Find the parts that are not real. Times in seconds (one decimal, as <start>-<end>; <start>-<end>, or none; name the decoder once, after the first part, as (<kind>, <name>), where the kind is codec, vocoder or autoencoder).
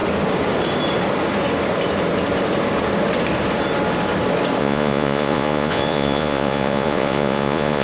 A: 4.6-7.8 (vocoder, Vocos)